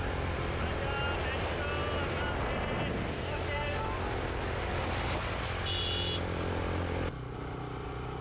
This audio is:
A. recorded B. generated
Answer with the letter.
A